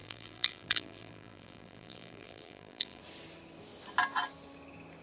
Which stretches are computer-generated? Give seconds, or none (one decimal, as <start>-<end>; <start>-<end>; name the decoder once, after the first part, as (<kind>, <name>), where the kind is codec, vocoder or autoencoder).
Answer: 0.0-3.0 (vocoder, BigVGAN v2)